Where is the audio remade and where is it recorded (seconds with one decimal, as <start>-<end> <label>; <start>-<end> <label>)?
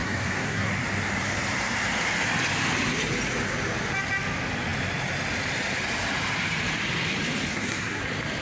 0.0-0.7 remade; 0.7-7.5 recorded; 7.5-8.0 remade; 8.0-8.4 recorded